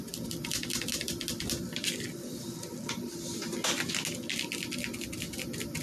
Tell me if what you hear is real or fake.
real